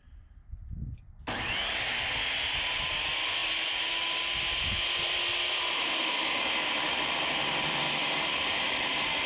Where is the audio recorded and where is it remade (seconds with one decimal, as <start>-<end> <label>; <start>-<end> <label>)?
0.0-9.3 recorded